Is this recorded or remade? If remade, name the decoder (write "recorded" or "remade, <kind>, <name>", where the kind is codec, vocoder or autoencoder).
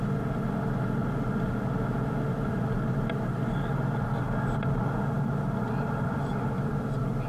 recorded